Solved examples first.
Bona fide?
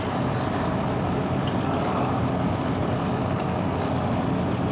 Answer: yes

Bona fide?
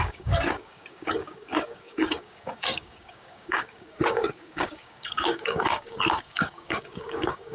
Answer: no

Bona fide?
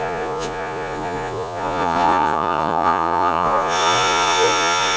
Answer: no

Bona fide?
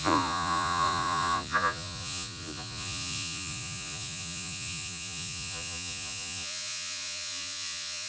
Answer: no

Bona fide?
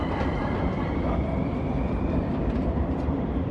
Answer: no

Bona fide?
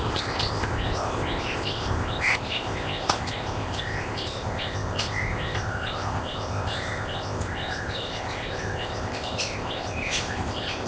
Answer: no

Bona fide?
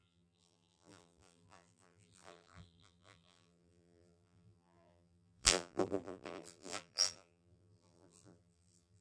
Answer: no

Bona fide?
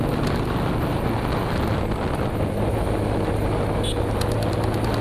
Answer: yes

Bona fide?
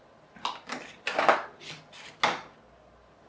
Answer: yes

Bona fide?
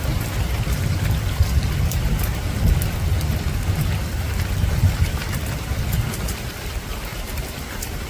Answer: yes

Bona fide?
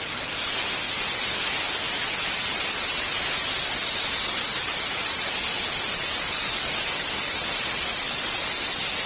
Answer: yes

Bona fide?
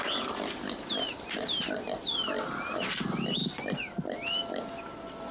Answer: yes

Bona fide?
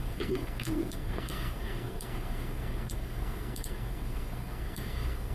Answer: no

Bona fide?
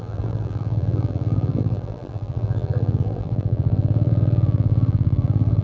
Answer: no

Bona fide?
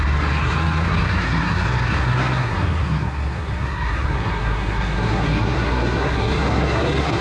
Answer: no